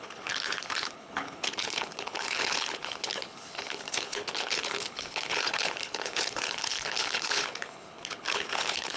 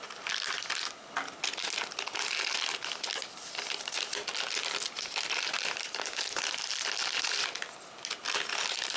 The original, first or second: second